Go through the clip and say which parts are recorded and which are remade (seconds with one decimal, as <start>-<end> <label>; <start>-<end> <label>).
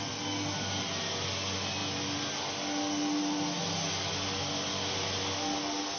0.0-6.0 recorded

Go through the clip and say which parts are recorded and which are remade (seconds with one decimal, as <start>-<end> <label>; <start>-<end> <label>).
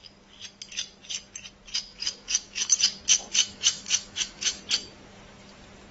0.0-1.9 recorded; 1.9-2.7 remade; 2.7-3.4 recorded; 3.4-4.6 remade; 4.6-5.9 recorded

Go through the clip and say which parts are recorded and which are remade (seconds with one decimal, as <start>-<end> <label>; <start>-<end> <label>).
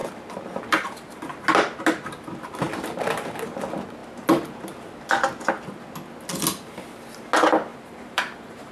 0.0-1.2 remade; 1.2-7.7 recorded; 7.7-8.7 remade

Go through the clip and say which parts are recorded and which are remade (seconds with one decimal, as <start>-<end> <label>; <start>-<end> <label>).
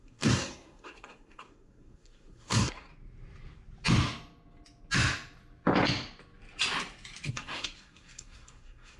0.0-2.9 remade; 2.9-7.3 recorded; 7.3-9.0 remade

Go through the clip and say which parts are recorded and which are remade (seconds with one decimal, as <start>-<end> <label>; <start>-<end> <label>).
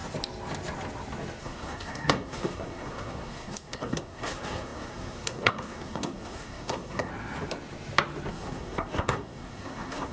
0.0-1.4 recorded; 1.4-7.1 remade; 7.1-8.3 recorded; 8.3-10.1 remade